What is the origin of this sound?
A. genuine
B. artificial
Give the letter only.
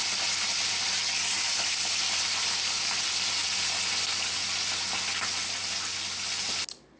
A